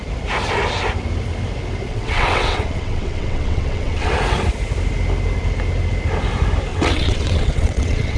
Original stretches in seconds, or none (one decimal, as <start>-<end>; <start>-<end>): 0.0-1.9; 4.1-6.7